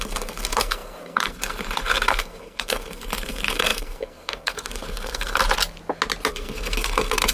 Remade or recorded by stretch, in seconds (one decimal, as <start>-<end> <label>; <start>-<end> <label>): 0.0-5.4 remade; 5.4-6.3 recorded; 6.3-7.3 remade